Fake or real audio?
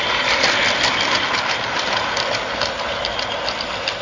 real